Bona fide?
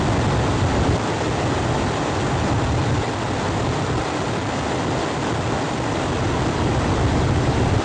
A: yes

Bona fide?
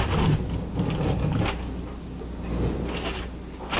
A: yes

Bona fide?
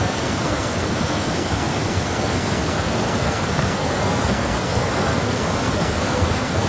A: no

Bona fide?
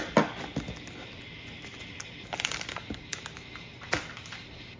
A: yes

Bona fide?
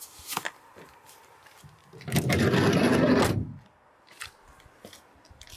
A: yes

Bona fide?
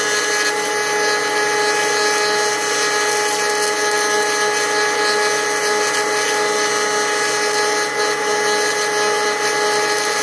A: yes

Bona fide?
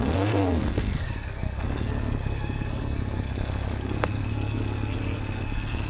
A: no